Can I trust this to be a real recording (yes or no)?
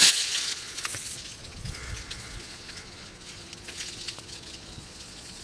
no